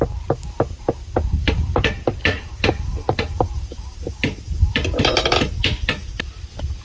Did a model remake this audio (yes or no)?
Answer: no